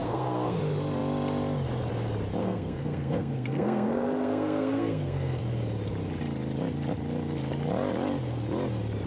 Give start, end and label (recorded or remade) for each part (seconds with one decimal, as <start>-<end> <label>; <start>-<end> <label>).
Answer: 0.0-0.6 remade; 0.6-2.4 recorded; 2.4-5.4 remade; 5.4-9.1 recorded